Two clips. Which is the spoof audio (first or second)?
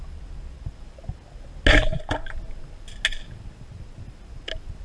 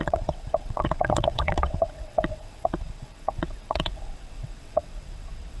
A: second